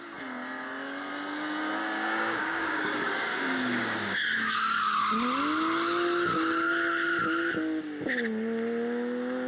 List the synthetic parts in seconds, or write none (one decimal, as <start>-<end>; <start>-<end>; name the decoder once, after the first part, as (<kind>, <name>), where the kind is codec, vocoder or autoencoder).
1.8-5.0 (codec, DAC)